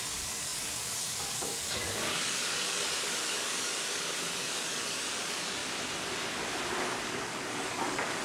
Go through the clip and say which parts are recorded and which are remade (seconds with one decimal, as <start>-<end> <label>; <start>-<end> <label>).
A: 0.0-5.6 remade; 5.6-6.8 recorded; 6.8-8.2 remade